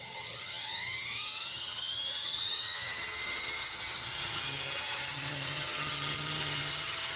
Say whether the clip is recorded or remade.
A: remade